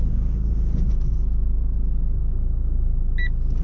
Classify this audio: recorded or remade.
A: recorded